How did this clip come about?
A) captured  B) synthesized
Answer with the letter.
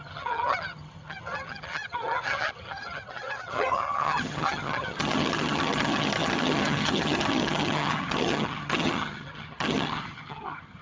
B